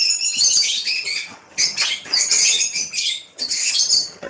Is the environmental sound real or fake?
fake